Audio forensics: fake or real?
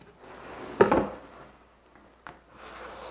real